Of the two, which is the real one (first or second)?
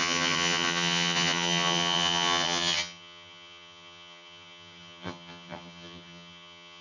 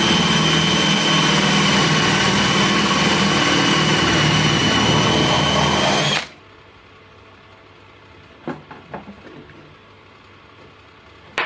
second